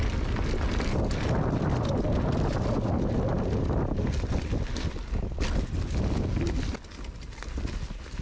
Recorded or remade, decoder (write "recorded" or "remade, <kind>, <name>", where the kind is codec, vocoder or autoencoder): recorded